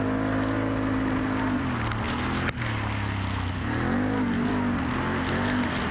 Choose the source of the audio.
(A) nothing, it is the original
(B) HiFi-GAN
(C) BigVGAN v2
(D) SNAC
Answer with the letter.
A